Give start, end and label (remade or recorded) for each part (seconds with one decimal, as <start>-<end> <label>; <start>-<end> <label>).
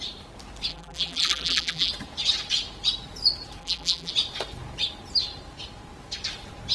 0.0-0.7 recorded; 0.7-1.9 remade; 1.9-3.6 recorded; 3.6-4.1 remade; 4.1-6.7 recorded